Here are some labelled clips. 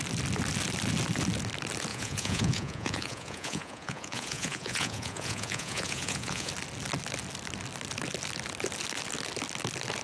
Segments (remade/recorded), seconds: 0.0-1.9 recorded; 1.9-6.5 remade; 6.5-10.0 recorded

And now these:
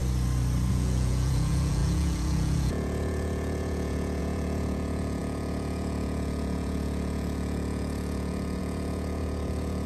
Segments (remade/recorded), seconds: 0.0-0.7 recorded; 0.7-9.9 remade